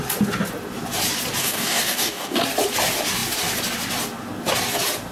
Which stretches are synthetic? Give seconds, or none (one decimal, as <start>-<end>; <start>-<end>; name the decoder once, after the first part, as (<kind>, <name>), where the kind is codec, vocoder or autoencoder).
1.4-2.4 (codec, DAC)